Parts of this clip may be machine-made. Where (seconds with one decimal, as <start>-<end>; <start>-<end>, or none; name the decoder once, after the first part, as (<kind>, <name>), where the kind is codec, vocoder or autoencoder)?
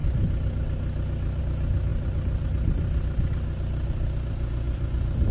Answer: none